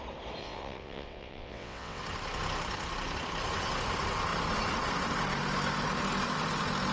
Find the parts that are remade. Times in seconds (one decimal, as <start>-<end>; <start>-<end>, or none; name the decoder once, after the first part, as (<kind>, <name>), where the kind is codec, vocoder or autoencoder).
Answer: 0.4-2.0 (vocoder, WaveNeXt)